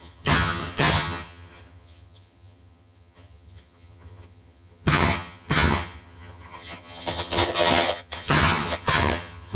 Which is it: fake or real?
fake